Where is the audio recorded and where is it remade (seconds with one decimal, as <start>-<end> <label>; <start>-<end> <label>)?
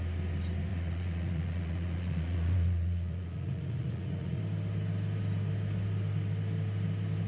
0.0-0.7 recorded; 0.7-4.4 remade; 4.4-7.3 recorded